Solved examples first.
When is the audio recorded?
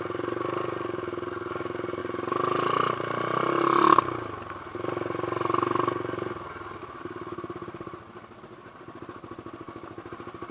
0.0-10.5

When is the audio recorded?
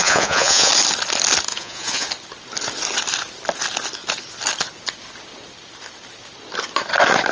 0.7-1.5; 2.1-7.3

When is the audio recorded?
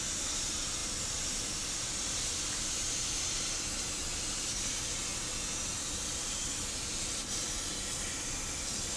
0.0-9.0